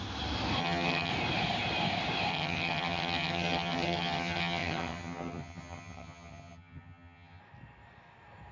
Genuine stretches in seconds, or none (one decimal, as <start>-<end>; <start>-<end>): 0.0-0.6; 1.1-2.3; 7.4-8.5